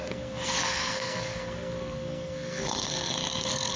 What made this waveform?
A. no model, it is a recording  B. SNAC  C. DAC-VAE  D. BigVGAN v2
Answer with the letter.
B